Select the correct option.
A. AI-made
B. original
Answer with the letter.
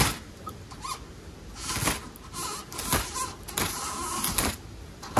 B